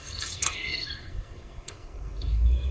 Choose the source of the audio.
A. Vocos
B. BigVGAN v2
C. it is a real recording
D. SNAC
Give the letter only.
D